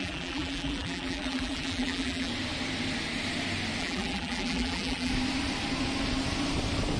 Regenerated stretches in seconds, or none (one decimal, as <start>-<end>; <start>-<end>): 0.0-2.3; 3.8-5.1

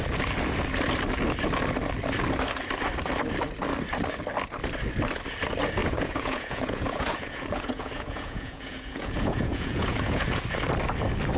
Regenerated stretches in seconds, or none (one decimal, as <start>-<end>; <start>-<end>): 5.8-10.4

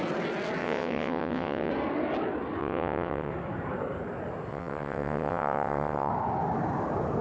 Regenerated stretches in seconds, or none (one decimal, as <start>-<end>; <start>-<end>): 0.6-1.7; 2.6-3.3; 4.5-6.1

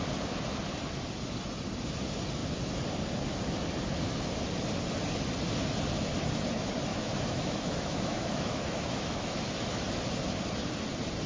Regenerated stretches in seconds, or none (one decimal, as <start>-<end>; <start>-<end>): 6.9-9.5

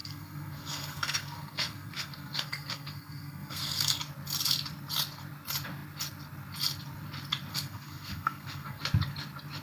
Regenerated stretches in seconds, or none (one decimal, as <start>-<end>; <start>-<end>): 0.0-4.0; 7.5-8.8

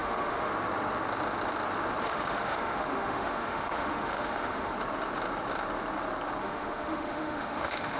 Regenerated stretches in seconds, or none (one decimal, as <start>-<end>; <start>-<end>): 0.0-0.5; 2.0-4.7; 6.4-8.0

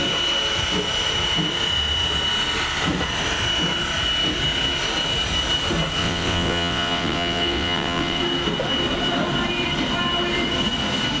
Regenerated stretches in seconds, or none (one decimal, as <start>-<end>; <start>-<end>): 6.0-8.2

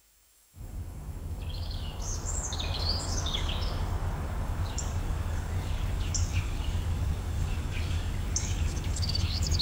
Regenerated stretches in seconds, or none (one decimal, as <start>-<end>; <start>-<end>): 0.0-9.6